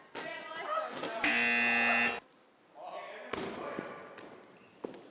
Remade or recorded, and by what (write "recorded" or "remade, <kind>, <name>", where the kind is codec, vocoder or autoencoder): recorded